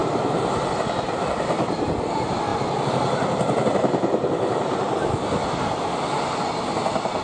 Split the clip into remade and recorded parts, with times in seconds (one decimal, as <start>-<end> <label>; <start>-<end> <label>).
0.0-7.2 recorded